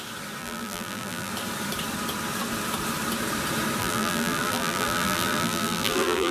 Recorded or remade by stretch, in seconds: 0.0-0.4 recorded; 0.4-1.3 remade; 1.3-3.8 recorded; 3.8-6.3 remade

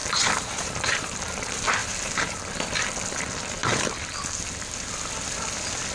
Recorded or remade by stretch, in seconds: 0.0-1.2 remade; 1.2-1.8 recorded; 1.8-2.5 remade; 2.5-5.9 recorded

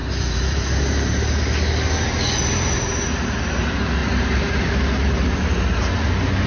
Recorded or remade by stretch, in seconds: 0.0-0.7 remade; 0.7-4.0 recorded; 4.0-4.5 remade; 4.5-6.5 recorded

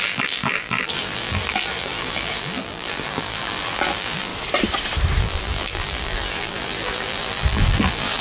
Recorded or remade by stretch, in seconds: 0.0-4.3 remade; 4.3-5.2 recorded; 5.2-8.2 remade

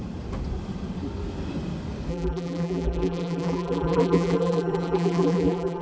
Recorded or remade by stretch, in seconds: 0.0-2.1 recorded; 2.1-5.8 remade

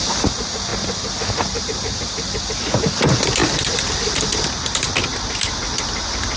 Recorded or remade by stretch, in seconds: 0.0-3.4 recorded; 3.4-4.5 remade; 4.5-6.4 recorded

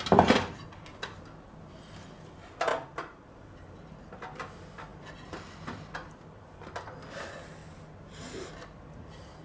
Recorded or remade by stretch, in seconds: 0.0-2.7 recorded; 2.7-3.3 remade; 3.3-4.9 recorded; 4.9-5.5 remade; 5.5-9.4 recorded